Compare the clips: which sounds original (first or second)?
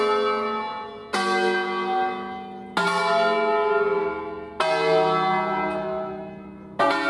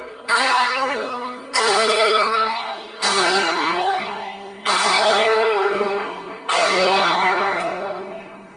first